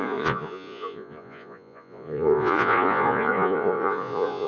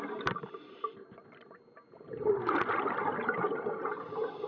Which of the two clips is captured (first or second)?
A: second